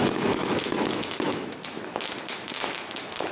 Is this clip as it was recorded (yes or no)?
no